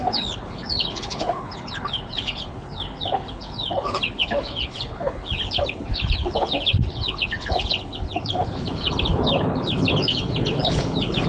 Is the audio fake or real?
fake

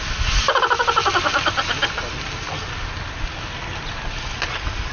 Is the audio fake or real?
real